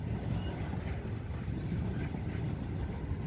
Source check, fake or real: real